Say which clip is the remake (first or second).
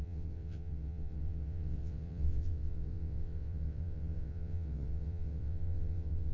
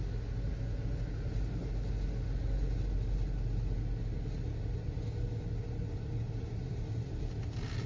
first